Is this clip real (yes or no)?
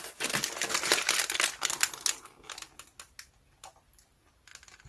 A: yes